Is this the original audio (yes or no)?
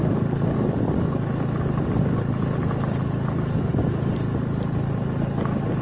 yes